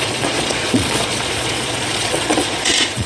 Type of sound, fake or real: fake